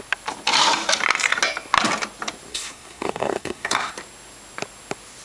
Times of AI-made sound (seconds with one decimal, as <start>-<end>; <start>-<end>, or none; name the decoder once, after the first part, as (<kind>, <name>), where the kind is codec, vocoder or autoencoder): 2.5-3.9 (codec, SNAC)